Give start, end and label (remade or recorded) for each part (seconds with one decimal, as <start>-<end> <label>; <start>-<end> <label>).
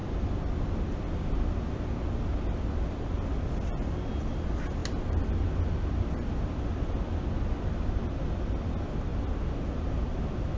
0.0-10.6 recorded